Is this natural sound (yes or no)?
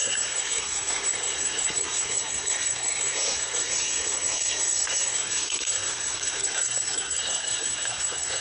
no